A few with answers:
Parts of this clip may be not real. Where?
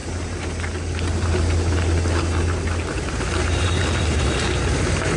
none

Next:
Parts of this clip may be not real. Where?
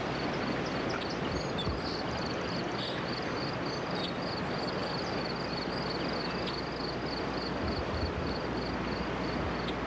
none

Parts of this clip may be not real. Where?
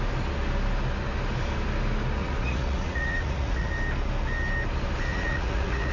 2.2-3.7; 5.1-5.9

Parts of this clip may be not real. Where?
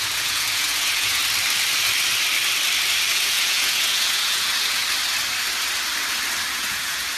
0.0-1.2; 3.1-4.8; 6.5-7.2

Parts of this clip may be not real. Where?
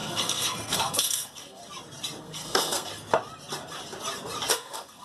0.0-1.6; 2.2-2.9; 4.5-5.0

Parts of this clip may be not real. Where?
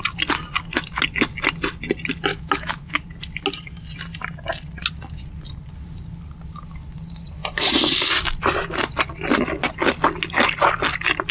2.3-3.0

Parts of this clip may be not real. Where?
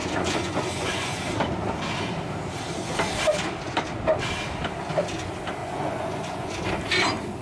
0.0-1.2; 5.6-6.5